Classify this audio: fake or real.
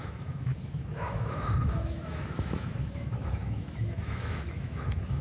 fake